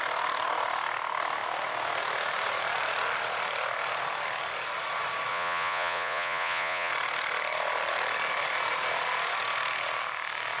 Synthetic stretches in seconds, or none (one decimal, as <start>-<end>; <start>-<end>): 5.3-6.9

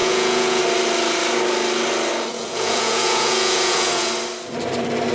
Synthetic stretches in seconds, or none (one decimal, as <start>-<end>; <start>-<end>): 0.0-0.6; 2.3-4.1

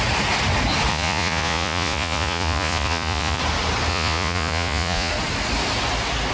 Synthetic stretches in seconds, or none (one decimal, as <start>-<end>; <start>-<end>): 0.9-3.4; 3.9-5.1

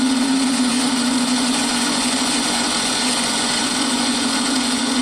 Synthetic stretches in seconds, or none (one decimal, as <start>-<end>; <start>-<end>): 0.0-5.0